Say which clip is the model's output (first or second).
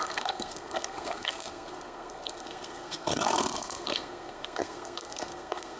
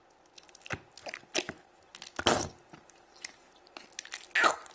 first